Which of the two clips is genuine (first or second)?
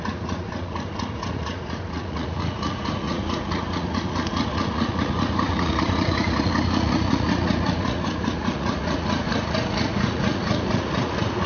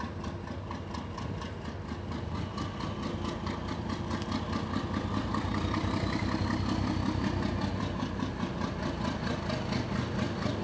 second